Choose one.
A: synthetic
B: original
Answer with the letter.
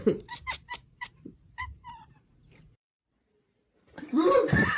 A